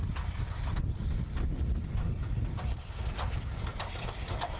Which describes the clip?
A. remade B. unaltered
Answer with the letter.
B